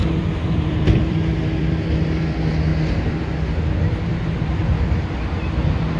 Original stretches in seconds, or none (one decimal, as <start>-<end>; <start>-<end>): 1.9-4.1; 4.7-6.0